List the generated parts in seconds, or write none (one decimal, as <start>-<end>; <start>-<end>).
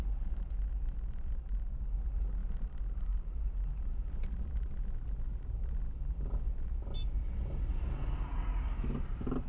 2.4-4.7; 5.3-7.2